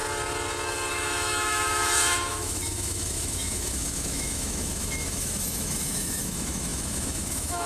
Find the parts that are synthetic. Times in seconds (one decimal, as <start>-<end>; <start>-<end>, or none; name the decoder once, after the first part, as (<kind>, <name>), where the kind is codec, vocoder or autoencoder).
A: 0.9-7.7 (autoencoder, DAC-VAE)